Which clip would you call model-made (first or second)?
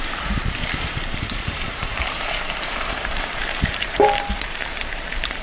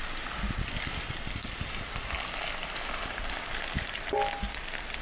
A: first